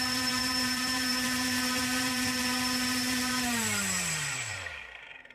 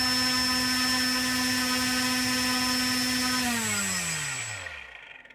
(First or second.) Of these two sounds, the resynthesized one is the first